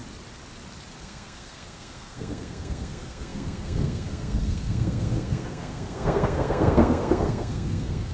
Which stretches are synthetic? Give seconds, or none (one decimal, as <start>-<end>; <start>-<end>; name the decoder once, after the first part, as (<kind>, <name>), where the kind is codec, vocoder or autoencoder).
1.0-8.1 (codec, SNAC)